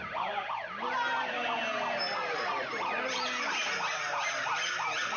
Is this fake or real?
real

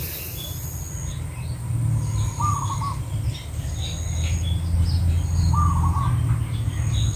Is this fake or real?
real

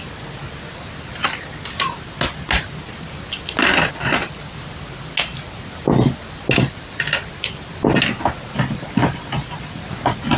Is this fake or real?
real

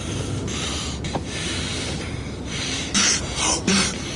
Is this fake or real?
real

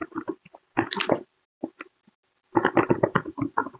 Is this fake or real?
real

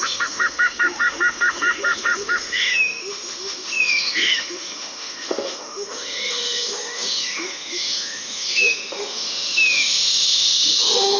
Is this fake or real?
fake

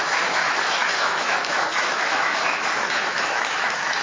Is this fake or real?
fake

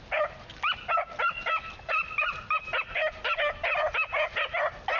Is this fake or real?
real